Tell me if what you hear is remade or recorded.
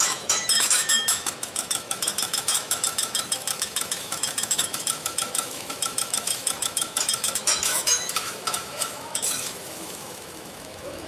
remade